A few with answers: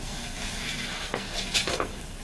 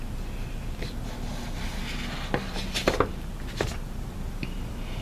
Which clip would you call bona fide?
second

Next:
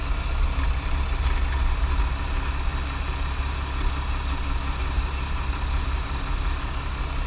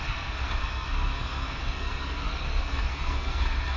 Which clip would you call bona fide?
first